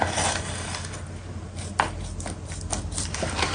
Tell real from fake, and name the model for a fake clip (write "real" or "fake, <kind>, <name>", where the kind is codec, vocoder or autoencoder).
real